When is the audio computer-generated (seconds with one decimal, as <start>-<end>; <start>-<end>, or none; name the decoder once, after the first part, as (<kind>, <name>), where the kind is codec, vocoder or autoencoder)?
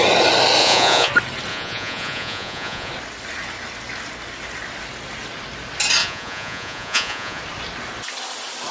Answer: 0.6-1.1 (vocoder, Vocos); 1.5-2.9; 6.0-7.4